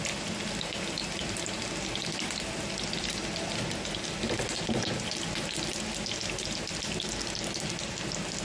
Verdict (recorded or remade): recorded